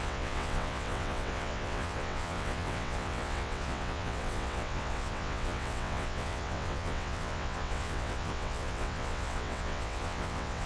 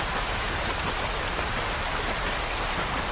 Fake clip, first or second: first